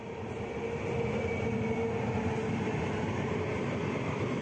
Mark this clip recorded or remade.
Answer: recorded